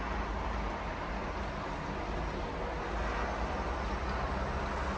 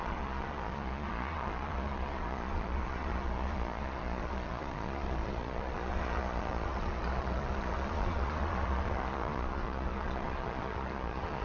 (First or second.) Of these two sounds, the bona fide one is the first